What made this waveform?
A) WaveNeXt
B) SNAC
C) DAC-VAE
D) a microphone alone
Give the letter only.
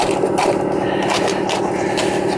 D